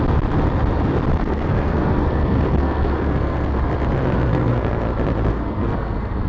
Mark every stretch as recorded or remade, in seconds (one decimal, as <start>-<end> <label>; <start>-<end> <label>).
0.0-1.1 recorded; 1.1-3.6 remade; 3.6-4.3 recorded; 4.3-4.8 remade; 4.8-5.3 recorded; 5.3-6.3 remade